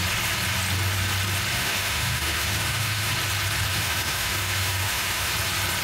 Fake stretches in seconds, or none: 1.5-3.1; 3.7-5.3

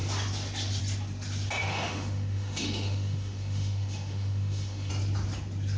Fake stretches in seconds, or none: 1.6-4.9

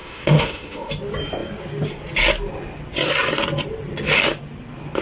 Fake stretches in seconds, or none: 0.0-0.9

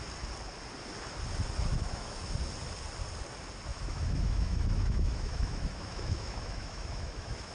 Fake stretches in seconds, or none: 1.7-2.3; 3.7-7.5

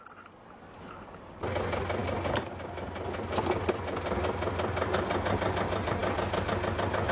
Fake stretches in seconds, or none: none

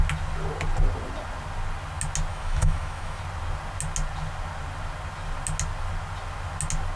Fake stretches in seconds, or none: 2.3-3.2

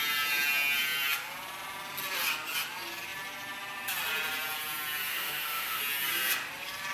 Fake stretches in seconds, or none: 5.1-5.8

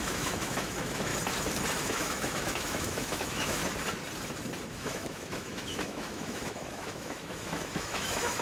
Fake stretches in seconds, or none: 0.0-1.1; 1.9-3.6; 4.7-8.4